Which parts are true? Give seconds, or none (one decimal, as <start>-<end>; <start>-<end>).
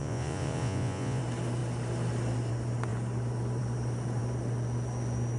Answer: 1.2-5.4